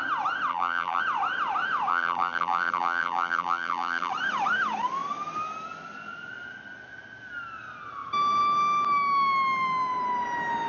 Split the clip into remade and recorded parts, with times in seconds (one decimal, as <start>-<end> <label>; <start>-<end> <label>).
0.0-0.5 recorded; 0.5-1.0 remade; 1.0-1.9 recorded; 1.9-4.1 remade; 4.1-10.7 recorded